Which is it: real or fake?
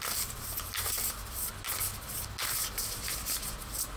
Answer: real